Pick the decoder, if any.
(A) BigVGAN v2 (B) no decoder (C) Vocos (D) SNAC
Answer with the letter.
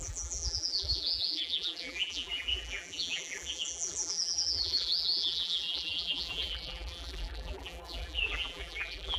A